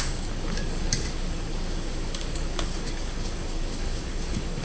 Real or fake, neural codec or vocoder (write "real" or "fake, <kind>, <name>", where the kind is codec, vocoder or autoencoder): fake, codec, DAC